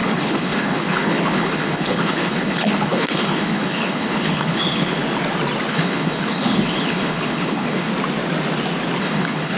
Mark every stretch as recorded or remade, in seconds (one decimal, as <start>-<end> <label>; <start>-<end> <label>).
0.0-5.0 remade; 5.0-5.7 recorded; 5.7-7.9 remade; 7.9-9.0 recorded; 9.0-9.6 remade